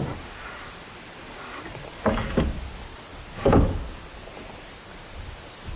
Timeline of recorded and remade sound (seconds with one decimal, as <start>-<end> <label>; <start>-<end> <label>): 0.0-5.8 recorded